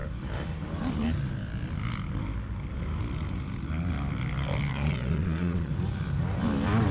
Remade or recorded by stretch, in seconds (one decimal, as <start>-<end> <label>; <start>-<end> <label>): 0.0-4.7 recorded; 4.7-5.7 remade; 5.7-6.9 recorded